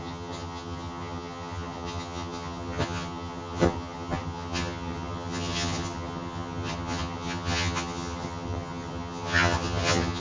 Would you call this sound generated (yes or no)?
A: yes